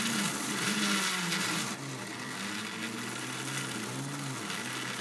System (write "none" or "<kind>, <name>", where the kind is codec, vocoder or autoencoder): none